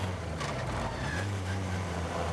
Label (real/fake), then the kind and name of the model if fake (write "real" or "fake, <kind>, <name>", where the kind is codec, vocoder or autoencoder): fake, vocoder, BigVGAN v2